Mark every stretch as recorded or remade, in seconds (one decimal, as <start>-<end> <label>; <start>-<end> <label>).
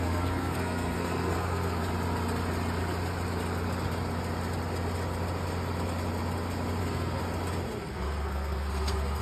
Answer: 0.0-1.8 remade; 1.8-6.8 recorded; 6.8-7.2 remade; 7.2-7.8 recorded; 7.8-9.2 remade